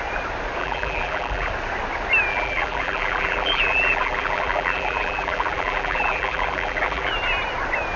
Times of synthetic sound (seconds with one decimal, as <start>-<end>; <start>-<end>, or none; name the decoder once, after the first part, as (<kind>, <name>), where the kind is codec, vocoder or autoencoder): 0.6-1.5 (vocoder, BigVGAN v2); 2.3-7.1